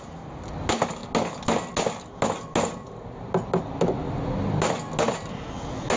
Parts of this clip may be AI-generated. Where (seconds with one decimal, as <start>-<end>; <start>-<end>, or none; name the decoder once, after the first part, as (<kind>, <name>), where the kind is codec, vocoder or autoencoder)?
none

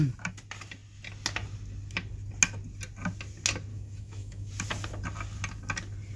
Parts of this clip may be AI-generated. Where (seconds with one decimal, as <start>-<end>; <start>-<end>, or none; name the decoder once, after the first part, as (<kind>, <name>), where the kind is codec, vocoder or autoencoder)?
3.7-4.5 (autoencoder, DAC-VAE)

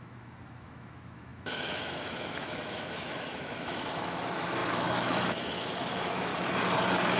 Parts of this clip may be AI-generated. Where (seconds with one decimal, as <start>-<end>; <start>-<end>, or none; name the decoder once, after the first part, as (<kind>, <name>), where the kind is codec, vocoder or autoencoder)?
0.0-6.3 (autoencoder, DAC-VAE)

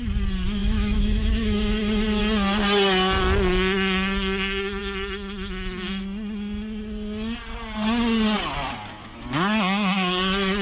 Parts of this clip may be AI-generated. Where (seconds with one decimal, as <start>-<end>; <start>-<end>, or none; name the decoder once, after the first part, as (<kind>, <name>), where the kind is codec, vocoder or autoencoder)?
0.6-2.2 (autoencoder, DAC-VAE)

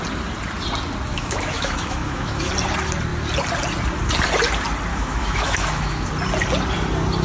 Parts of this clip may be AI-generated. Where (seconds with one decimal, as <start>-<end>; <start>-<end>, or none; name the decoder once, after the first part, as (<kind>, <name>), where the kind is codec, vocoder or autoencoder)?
1.1-2.5 (autoencoder, DAC-VAE); 4.9-6.1

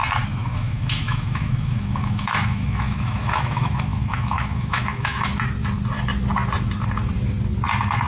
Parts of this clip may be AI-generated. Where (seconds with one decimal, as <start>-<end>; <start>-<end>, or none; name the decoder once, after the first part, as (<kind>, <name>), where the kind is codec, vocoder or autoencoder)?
0.4-5.3 (autoencoder, DAC-VAE)

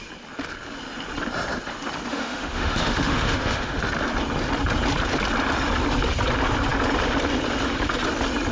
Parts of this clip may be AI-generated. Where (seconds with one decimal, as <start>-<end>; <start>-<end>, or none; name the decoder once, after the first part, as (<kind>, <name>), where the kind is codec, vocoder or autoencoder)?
2.1-3.8 (autoencoder, DAC-VAE)

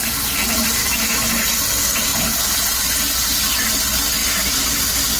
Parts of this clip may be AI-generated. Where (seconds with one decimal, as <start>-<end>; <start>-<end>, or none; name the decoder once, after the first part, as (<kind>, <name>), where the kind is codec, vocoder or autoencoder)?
0.8-1.3 (autoencoder, DAC-VAE)